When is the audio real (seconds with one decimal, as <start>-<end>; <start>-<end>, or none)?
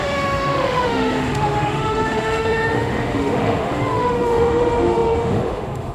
none